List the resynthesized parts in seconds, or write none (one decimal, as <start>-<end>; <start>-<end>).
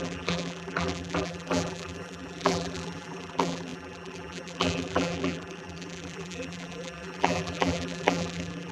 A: 0.0-8.7